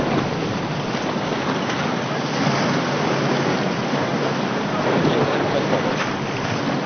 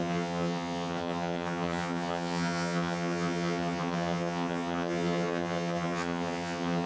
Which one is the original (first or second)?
first